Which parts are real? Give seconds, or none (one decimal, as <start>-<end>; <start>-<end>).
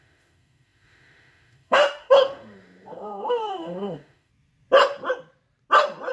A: 4.3-6.1